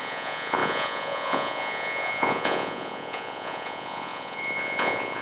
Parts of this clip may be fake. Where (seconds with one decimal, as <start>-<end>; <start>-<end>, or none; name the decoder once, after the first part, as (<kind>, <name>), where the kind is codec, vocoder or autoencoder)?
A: 0.0-5.2 (vocoder, Vocos)